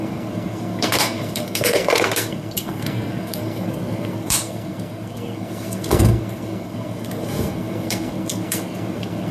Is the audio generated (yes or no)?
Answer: yes